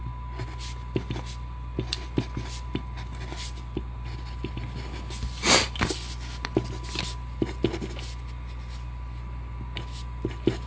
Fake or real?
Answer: real